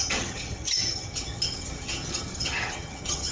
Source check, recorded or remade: remade